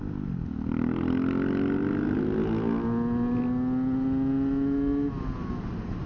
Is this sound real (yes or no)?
yes